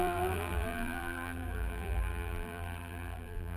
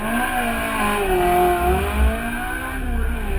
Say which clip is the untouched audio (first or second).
second